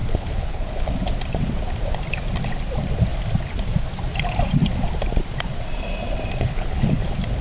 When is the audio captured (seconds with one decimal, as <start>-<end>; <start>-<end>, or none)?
0.9-6.5; 7.0-7.4